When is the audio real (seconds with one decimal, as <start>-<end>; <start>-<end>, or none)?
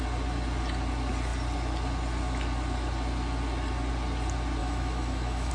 0.0-4.6